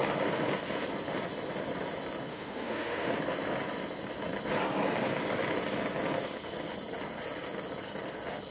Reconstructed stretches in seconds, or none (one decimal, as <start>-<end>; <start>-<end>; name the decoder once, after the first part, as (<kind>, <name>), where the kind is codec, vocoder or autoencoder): 2.3-3.1 (autoencoder, DAC-VAE)